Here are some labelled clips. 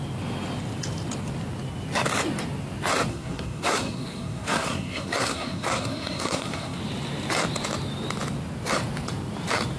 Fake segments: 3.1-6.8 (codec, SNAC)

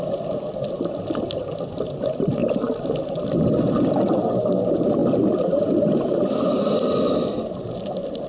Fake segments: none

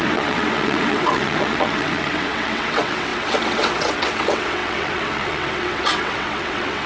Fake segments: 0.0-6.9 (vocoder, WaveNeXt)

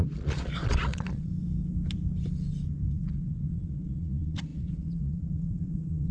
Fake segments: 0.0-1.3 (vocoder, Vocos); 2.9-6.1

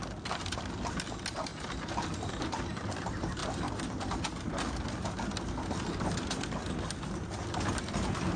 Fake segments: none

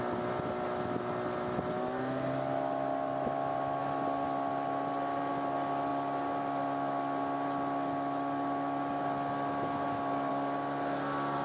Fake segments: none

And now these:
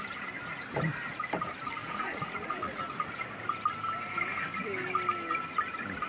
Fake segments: 1.8-2.8 (vocoder, Vocos)